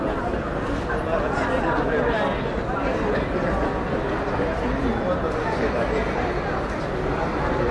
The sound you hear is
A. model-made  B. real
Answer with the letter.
B